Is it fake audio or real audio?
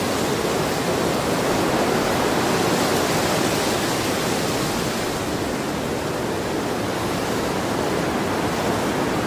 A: real